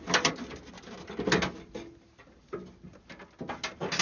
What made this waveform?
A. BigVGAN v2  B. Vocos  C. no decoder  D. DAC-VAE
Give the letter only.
C